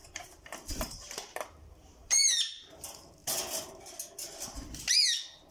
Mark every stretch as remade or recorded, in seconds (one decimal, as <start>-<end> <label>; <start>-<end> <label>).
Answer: 0.0-2.7 remade; 2.7-5.5 recorded

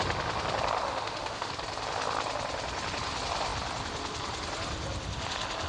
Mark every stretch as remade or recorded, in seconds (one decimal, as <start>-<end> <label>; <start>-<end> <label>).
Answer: 0.0-0.8 recorded; 0.8-1.5 remade; 1.5-5.7 recorded

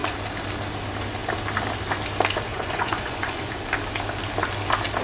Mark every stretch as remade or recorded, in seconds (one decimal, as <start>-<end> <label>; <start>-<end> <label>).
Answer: 0.0-2.5 recorded; 2.5-3.5 remade; 3.5-5.0 recorded

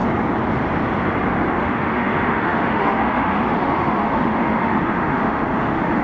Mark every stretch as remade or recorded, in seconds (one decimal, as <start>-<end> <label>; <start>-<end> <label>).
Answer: 0.0-1.5 recorded; 1.5-6.0 remade

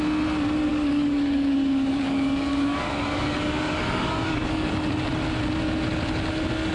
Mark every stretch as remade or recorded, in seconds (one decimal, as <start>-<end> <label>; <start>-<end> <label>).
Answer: 0.0-0.7 recorded; 0.7-4.7 remade; 4.7-6.7 recorded

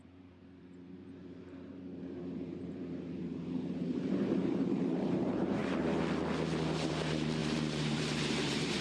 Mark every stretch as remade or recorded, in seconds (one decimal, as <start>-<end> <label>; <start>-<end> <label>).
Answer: 0.0-5.6 remade; 5.6-6.9 recorded; 6.9-8.8 remade